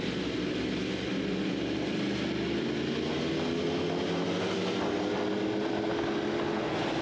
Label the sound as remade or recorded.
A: recorded